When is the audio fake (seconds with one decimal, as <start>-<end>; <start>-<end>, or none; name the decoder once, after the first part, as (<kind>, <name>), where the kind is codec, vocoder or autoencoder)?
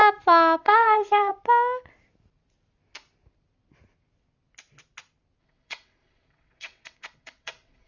0.6-1.3 (vocoder, WaveNeXt); 5.4-7.9